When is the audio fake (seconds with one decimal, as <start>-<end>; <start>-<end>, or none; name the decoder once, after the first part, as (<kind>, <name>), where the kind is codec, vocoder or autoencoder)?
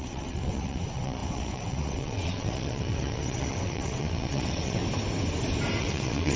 0.0-4.8 (vocoder, WaveNeXt); 5.8-6.4